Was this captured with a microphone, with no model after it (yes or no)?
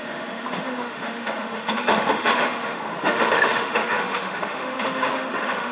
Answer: no